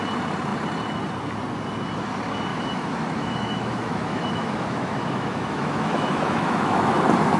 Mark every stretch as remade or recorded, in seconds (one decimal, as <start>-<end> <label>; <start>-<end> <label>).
0.0-2.5 recorded; 2.5-6.9 remade; 6.9-7.4 recorded